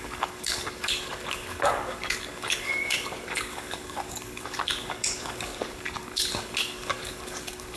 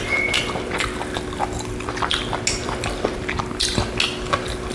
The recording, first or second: second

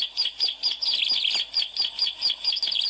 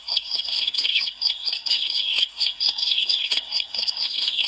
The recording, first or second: first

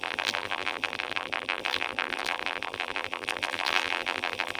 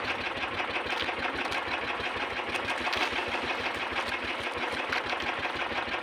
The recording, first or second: second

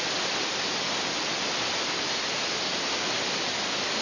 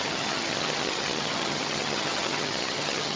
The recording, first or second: first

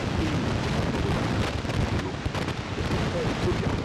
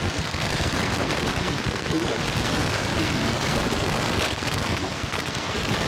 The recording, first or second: first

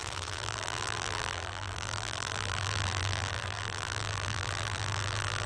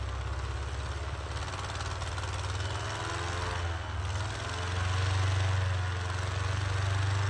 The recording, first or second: second